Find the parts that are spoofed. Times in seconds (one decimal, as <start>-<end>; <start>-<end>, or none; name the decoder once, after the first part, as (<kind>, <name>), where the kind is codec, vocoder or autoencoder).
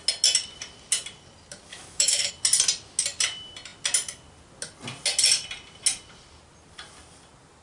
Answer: 1.7-2.3 (autoencoder, DAC-VAE)